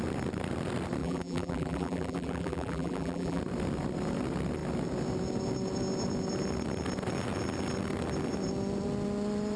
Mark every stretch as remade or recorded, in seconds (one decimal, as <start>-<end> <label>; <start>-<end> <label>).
0.0-1.0 recorded; 1.0-3.4 remade; 3.4-9.6 recorded